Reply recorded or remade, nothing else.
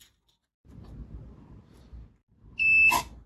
recorded